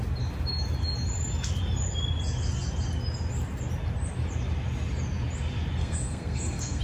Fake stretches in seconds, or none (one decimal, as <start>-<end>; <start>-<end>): 5.8-6.8